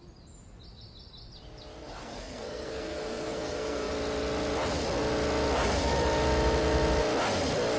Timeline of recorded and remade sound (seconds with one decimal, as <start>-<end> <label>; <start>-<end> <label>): 0.0-1.8 recorded; 1.8-3.9 remade; 3.9-7.8 recorded